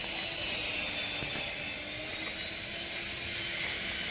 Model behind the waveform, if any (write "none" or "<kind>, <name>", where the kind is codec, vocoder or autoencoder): none